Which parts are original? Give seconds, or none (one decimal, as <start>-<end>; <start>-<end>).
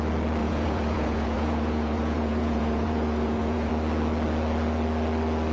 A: 0.0-0.4; 3.7-5.5